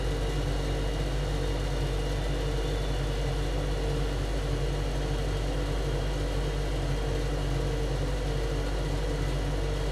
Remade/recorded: recorded